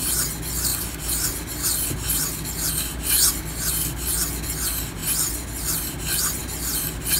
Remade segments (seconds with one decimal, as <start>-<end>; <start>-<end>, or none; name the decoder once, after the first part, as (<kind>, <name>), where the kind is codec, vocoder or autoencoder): none